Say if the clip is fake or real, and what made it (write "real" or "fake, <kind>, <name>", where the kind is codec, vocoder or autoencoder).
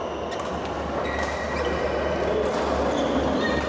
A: real